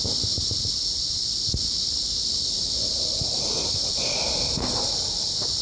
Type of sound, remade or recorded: recorded